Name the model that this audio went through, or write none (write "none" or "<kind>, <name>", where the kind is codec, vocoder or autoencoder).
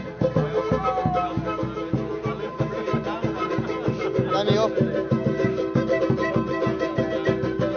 none